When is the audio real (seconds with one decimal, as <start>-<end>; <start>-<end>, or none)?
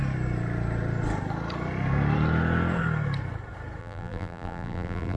0.0-3.8